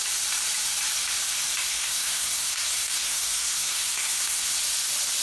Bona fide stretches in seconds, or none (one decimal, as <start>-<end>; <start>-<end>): 0.0-1.7; 4.6-5.2